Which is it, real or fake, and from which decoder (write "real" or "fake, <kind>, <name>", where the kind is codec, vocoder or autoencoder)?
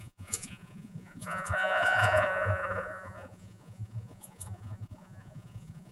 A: fake, vocoder, Vocos